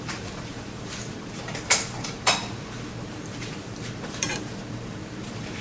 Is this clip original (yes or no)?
no